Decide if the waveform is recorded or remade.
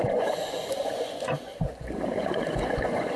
remade